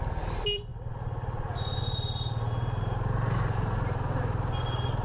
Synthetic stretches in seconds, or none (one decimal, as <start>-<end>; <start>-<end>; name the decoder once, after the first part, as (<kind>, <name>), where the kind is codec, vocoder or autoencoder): none